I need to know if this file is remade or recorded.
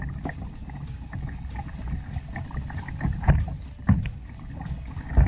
recorded